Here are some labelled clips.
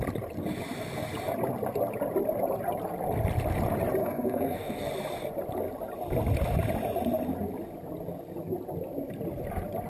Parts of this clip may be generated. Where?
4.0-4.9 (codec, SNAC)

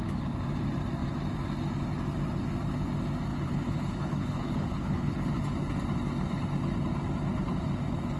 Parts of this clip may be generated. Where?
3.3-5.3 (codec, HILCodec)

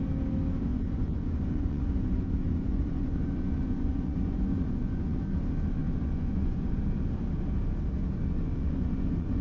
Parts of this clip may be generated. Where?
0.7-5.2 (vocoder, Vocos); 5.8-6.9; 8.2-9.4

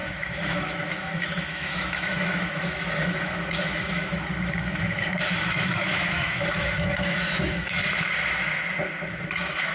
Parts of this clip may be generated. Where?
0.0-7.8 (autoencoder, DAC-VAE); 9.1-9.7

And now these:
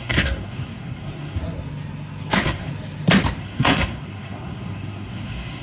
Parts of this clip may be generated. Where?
0.0-1.4 (codec, SNAC); 2.3-2.7; 3.4-5.6

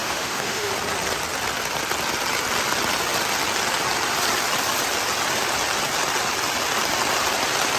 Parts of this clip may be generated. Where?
0.0-0.7 (autoencoder, DAC-VAE)

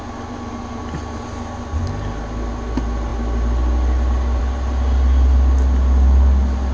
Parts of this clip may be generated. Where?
none